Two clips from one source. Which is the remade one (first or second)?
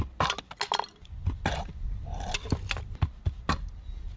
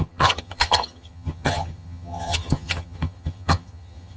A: second